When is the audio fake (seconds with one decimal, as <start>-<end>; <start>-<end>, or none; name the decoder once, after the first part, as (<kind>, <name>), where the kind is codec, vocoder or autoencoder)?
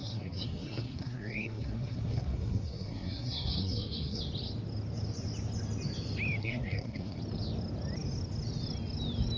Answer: 0.0-4.2 (codec, SNAC); 6.4-7.2